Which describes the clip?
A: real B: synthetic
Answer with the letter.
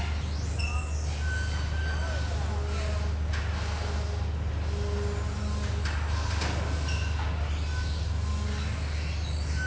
A